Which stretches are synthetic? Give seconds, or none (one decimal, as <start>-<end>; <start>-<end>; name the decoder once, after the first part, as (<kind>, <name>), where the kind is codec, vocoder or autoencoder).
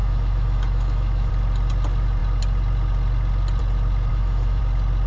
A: 0.0-1.3 (autoencoder, DAC-VAE); 4.1-4.6